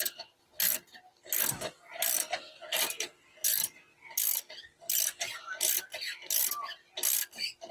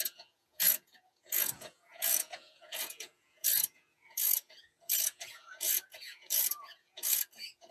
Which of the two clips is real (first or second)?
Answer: first